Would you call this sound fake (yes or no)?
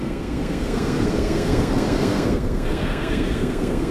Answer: yes